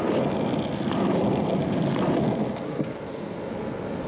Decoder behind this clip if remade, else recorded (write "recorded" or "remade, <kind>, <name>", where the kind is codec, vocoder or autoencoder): recorded